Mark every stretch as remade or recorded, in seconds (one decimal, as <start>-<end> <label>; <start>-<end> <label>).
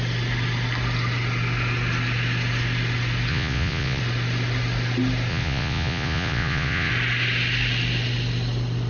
0.0-3.3 recorded; 3.3-4.0 remade; 4.0-5.3 recorded; 5.3-6.9 remade; 6.9-8.9 recorded